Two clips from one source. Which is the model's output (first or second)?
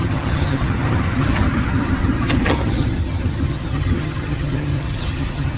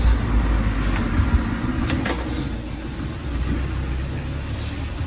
first